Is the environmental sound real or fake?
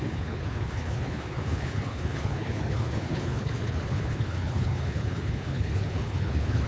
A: fake